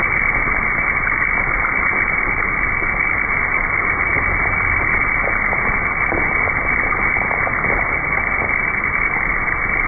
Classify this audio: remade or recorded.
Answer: recorded